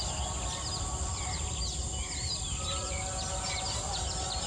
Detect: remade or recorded recorded